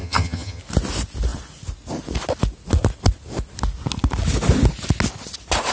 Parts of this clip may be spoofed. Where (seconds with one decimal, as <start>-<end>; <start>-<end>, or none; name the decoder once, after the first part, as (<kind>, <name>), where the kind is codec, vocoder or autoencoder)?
0.0-0.6 (vocoder, HiFi-GAN)